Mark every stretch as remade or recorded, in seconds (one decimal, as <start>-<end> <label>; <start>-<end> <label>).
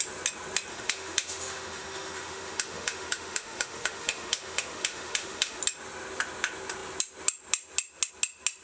0.0-0.7 recorded; 0.7-5.6 remade; 5.6-8.6 recorded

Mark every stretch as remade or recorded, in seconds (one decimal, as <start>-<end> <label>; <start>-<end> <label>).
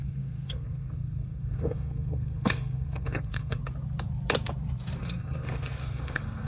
0.0-3.6 remade; 3.6-5.0 recorded; 5.0-6.5 remade